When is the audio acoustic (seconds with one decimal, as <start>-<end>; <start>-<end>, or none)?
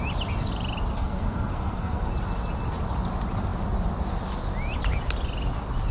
0.0-0.9; 2.1-5.9